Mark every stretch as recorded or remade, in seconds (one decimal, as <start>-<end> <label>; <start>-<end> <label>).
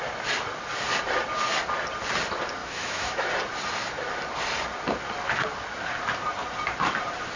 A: 0.0-2.6 recorded; 2.6-3.3 remade; 3.3-7.4 recorded